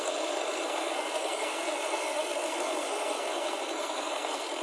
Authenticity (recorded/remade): remade